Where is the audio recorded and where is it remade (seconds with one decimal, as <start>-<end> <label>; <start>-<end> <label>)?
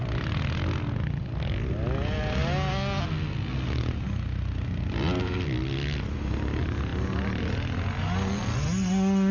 0.0-9.3 recorded